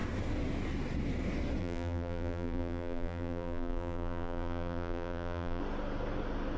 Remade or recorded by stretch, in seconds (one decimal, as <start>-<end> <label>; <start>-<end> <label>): 0.0-1.6 recorded; 1.6-5.6 remade; 5.6-6.6 recorded